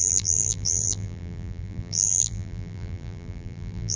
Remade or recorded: remade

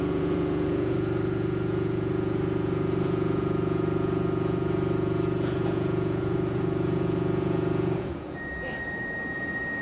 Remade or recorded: remade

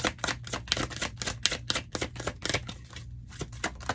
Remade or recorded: recorded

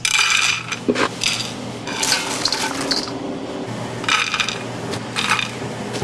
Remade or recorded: recorded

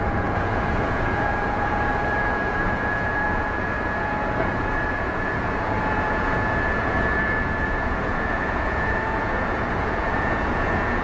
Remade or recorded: remade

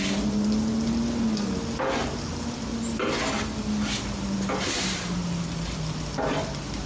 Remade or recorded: recorded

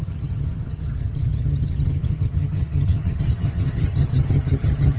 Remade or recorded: remade